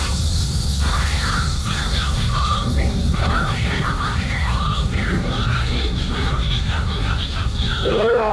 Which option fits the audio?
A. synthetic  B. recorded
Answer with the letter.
A